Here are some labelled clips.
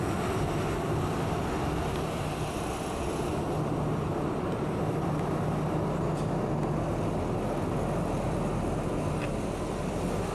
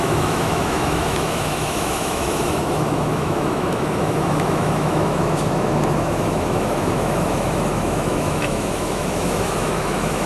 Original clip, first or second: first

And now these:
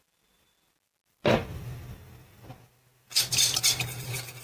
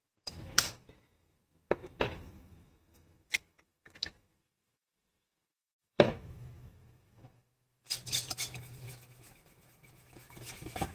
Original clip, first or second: first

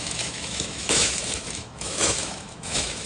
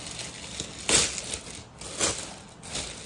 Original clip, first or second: second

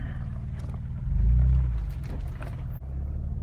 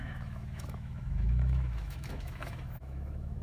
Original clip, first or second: first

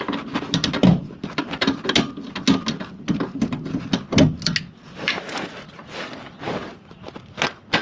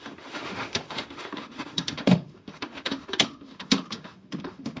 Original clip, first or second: first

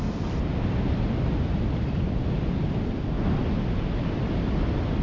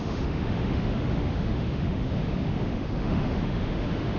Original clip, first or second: first